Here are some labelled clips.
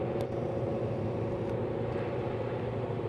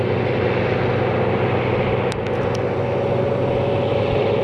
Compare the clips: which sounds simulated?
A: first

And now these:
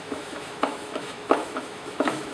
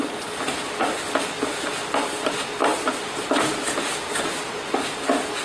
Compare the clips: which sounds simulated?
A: first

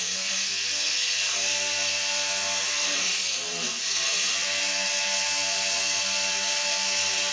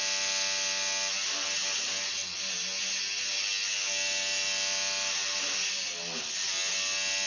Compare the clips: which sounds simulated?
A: first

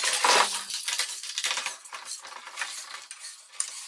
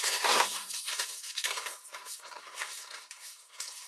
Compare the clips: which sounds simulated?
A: second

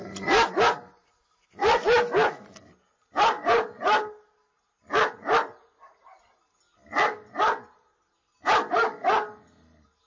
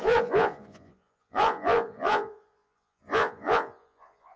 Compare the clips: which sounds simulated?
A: second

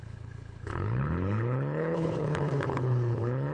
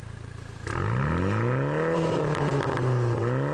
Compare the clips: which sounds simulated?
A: first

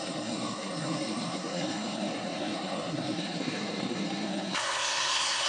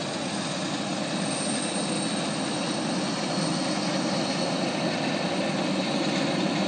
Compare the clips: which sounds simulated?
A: first